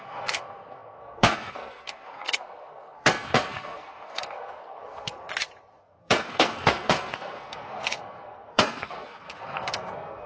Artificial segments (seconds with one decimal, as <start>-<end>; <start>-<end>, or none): 0.0-5.2; 5.8-10.3